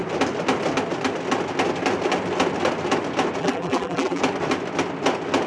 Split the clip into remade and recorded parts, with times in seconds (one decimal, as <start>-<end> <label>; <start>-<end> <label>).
0.0-3.4 recorded; 3.4-4.2 remade; 4.2-5.5 recorded